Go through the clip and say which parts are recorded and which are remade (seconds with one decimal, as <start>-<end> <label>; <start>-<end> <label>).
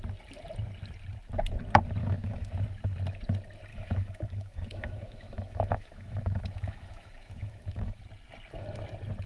0.0-2.0 recorded; 2.0-2.5 remade; 2.5-3.7 recorded; 3.7-8.0 remade; 8.0-9.3 recorded